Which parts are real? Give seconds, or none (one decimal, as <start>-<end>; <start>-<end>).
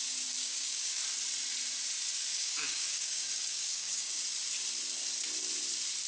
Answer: 0.0-0.4; 1.0-2.3; 4.2-6.1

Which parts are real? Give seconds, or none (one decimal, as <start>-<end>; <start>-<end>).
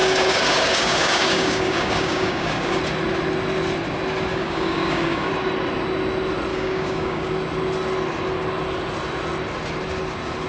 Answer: 2.8-4.3; 5.3-6.5; 7.3-10.5